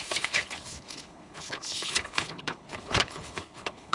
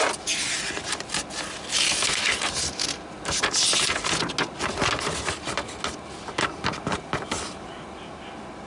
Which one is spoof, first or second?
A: first